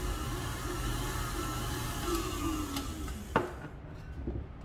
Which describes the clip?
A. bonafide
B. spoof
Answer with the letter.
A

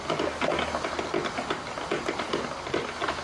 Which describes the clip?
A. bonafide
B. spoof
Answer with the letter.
A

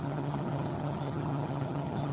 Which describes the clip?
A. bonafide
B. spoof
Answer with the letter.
B